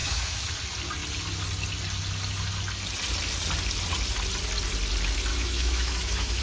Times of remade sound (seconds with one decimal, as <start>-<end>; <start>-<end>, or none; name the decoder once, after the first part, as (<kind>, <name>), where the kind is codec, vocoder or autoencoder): 0.0-0.5 (autoencoder, DAC-VAE); 5.3-6.4